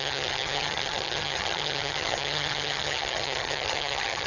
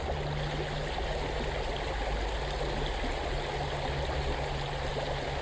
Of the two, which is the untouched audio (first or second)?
second